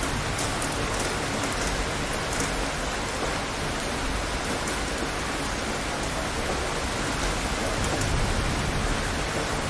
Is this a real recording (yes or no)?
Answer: yes